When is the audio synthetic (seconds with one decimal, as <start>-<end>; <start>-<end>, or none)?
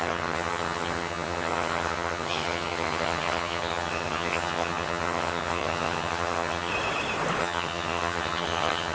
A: 0.0-6.7; 7.4-8.9